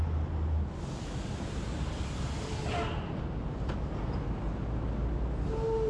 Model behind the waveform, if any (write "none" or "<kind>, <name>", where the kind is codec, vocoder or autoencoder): none